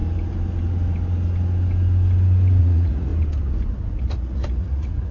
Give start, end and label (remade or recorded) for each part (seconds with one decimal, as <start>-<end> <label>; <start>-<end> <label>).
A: 0.0-2.6 recorded; 2.6-3.1 remade; 3.1-4.0 recorded; 4.0-5.1 remade